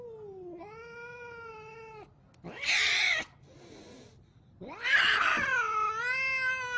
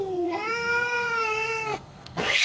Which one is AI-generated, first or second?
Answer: second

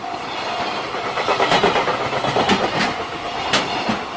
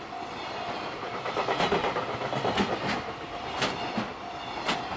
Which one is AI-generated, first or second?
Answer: first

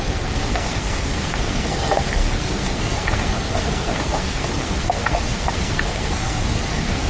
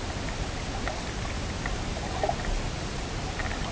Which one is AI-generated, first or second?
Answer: first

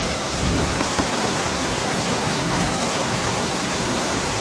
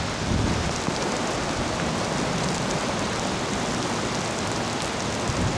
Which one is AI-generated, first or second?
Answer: first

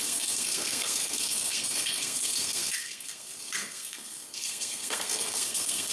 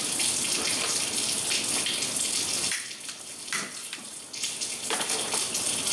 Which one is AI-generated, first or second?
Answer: first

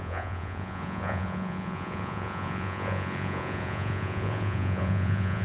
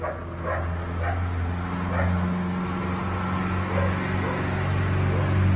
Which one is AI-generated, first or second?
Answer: first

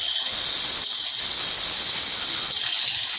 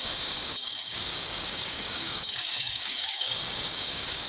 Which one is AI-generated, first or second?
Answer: second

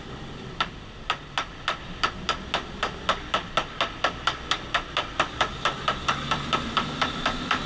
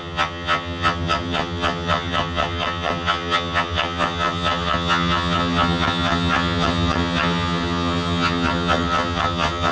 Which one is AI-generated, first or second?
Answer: second